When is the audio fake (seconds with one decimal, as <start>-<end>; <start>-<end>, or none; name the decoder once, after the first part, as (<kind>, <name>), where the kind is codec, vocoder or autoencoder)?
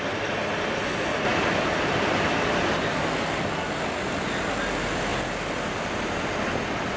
none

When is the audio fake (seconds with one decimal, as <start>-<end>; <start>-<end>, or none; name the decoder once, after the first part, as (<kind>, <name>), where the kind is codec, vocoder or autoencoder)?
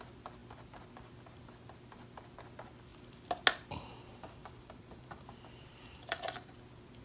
4.4-6.4 (vocoder, BigVGAN v2)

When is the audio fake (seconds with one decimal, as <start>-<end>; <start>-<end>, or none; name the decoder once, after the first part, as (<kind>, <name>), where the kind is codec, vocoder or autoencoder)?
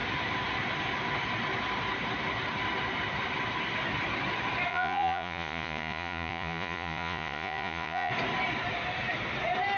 4.7-8.1 (vocoder, Vocos)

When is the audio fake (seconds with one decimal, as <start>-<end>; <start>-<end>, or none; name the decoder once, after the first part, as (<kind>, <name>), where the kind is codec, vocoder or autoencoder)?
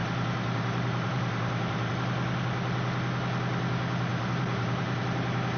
0.0-1.9 (vocoder, BigVGAN v2); 4.1-5.0